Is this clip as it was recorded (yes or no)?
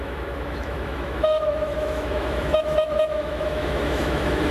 no